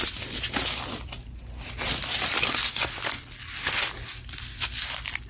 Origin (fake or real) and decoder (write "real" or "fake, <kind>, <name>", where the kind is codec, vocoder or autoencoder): real